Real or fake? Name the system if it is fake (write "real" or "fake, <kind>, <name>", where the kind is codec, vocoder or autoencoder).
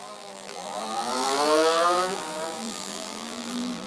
fake, vocoder, BigVGAN v2